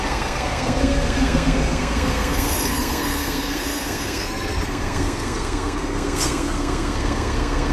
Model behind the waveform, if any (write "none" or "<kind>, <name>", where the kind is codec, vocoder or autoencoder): codec, SNAC